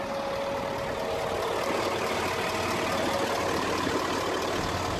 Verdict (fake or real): real